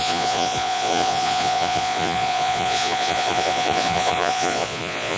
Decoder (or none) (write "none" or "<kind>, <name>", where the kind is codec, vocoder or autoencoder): vocoder, Vocos